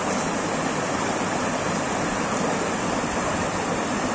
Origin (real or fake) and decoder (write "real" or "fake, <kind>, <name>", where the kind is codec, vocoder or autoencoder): real